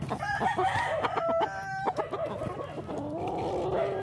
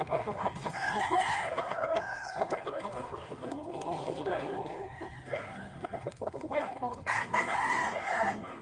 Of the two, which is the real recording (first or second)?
first